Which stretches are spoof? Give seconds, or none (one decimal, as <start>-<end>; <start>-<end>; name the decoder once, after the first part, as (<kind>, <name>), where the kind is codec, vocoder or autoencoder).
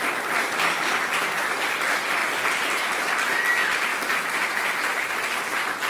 2.2-2.8 (vocoder, BigVGAN v2)